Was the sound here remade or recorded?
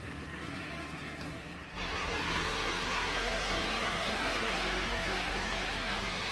remade